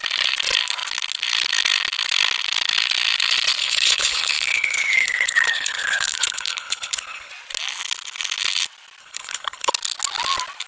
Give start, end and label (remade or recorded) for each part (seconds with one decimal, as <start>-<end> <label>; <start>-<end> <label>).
0.0-3.6 recorded; 3.6-7.3 remade; 7.3-9.0 recorded; 9.0-9.7 remade; 9.7-10.7 recorded